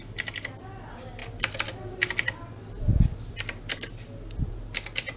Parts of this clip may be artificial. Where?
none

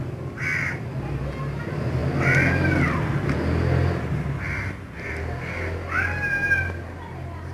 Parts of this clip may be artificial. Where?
none

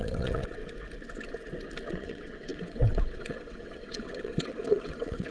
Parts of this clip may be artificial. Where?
0.0-0.6 (vocoder, WaveNeXt); 1.9-5.3

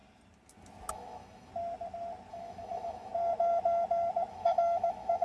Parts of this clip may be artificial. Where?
0.9-1.5 (autoencoder, DAC-VAE); 2.3-3.1; 4.3-5.2

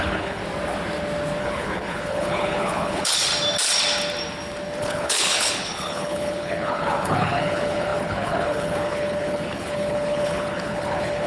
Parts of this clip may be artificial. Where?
0.0-0.4 (codec, HILCodec); 1.4-3.3; 4.8-11.3